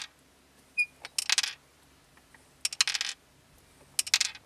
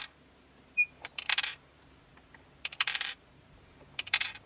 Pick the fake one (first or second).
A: second